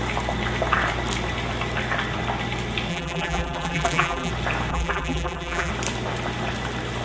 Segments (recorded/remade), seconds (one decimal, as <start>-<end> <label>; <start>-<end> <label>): 0.0-2.9 recorded; 2.9-4.3 remade; 4.3-4.7 recorded; 4.7-5.7 remade; 5.7-7.0 recorded